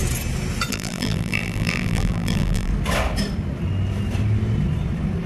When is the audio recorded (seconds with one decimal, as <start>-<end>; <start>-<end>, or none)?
0.0-0.7; 2.7-5.3